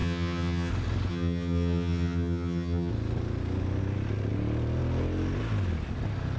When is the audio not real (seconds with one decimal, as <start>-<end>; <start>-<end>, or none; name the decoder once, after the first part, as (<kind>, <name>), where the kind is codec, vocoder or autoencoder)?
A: 0.0-0.7 (vocoder, HiFi-GAN); 1.1-2.9